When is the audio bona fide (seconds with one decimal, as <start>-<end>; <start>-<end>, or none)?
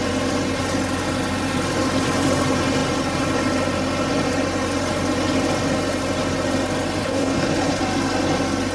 0.0-7.0; 7.8-8.7